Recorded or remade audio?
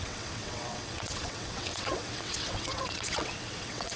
remade